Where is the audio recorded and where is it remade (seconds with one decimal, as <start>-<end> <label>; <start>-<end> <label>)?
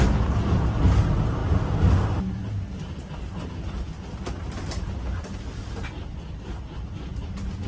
0.0-7.7 recorded